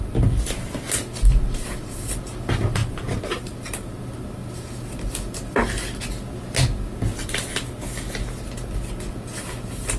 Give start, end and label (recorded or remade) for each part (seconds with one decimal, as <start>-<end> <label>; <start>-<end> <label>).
0.0-10.0 recorded

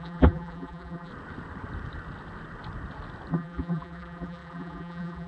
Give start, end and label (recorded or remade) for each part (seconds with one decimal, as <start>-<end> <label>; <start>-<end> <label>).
0.0-1.1 remade; 1.1-3.3 recorded; 3.3-5.3 remade

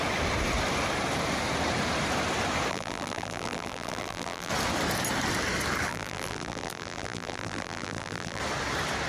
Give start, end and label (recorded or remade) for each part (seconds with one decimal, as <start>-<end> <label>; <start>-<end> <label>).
0.0-2.7 recorded; 2.7-4.5 remade; 4.5-5.9 recorded; 5.9-8.4 remade; 8.4-9.1 recorded

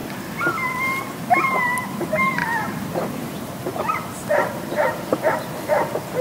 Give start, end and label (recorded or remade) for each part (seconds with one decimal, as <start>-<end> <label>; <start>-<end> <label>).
0.0-1.0 recorded; 1.0-6.2 remade

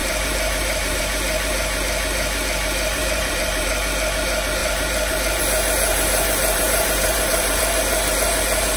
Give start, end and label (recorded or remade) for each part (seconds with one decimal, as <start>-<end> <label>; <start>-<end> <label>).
0.0-1.0 remade; 1.0-2.9 recorded; 2.9-3.7 remade; 3.7-4.6 recorded; 4.6-5.4 remade; 5.4-5.9 recorded; 5.9-7.6 remade; 7.6-8.8 recorded

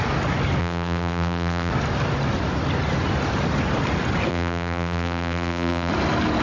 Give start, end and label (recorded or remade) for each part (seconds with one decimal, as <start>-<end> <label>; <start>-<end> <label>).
0.0-0.6 recorded; 0.6-1.7 remade; 1.7-4.3 recorded; 4.3-5.9 remade; 5.9-6.4 recorded

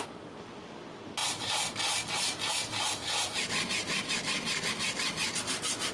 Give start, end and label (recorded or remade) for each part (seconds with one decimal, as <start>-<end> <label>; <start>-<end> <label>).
0.0-5.9 recorded

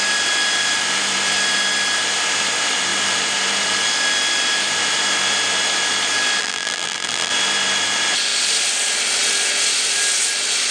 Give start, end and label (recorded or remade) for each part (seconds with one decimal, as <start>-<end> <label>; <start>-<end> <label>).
0.0-6.4 recorded; 6.4-7.3 remade; 7.3-10.7 recorded